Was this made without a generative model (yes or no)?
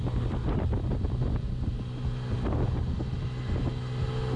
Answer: yes